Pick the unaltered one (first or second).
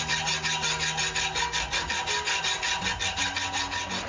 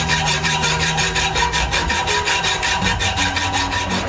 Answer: first